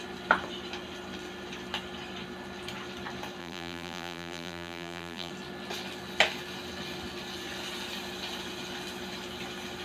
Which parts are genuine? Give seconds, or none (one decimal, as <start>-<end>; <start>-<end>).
0.0-3.4; 5.3-9.8

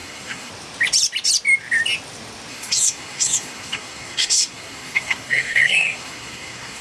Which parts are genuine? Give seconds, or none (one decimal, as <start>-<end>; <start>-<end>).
0.5-2.5

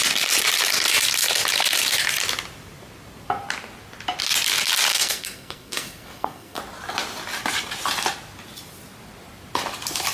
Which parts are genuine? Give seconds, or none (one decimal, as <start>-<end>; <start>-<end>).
0.0-4.9; 6.6-10.1

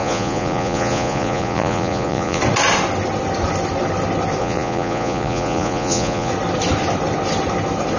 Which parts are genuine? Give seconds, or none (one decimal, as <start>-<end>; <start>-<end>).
2.4-4.4; 6.3-8.0